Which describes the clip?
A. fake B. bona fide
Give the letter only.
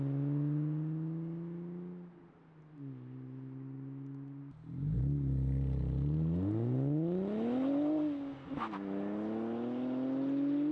B